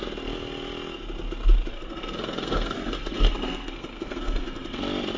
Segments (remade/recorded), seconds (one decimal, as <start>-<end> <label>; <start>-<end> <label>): 0.0-1.7 recorded; 1.7-4.8 remade; 4.8-5.2 recorded